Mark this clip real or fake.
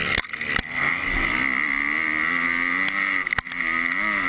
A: real